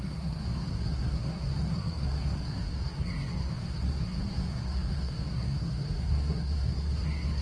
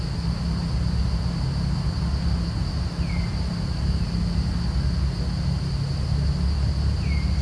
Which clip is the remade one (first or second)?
first